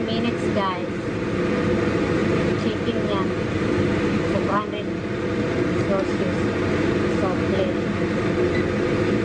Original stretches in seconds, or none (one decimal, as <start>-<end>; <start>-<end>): 0.0-0.8; 1.3-2.2; 3.0-9.2

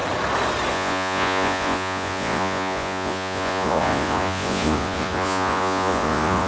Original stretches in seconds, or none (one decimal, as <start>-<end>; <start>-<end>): 0.0-0.7